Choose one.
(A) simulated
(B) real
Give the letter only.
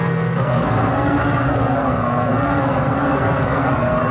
A